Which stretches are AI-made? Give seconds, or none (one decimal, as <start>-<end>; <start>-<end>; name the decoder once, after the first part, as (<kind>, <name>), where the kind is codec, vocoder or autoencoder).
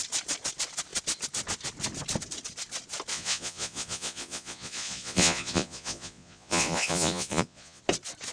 3.1-7.8 (vocoder, Vocos)